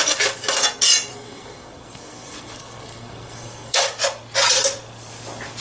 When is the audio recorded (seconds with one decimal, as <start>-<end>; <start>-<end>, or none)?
0.0-1.1; 3.8-5.6